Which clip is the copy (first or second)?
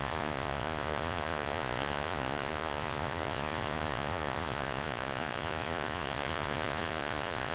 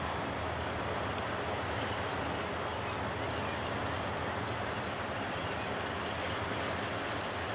first